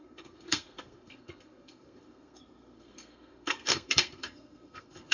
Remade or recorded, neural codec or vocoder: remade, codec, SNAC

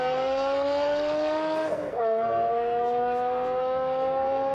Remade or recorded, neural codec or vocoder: remade, codec, SNAC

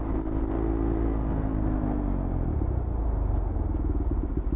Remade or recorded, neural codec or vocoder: recorded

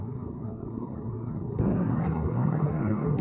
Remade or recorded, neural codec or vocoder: remade, codec, SNAC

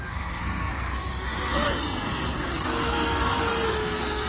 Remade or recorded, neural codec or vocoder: remade, codec, SNAC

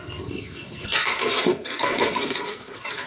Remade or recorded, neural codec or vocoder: remade, codec, SNAC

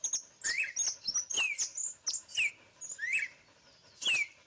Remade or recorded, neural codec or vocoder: recorded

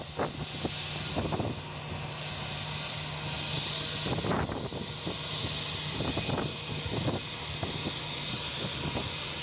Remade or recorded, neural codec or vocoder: recorded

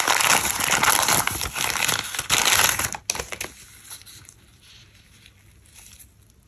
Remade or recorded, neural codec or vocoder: recorded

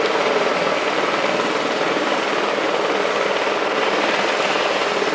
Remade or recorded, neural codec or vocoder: recorded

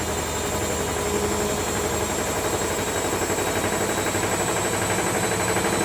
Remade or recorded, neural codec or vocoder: recorded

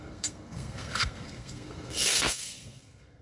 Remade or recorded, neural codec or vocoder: remade, codec, SNAC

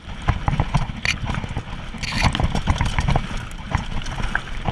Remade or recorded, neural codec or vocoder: recorded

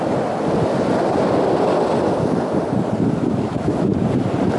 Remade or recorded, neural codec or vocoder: recorded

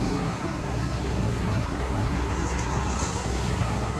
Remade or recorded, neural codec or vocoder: remade, codec, SNAC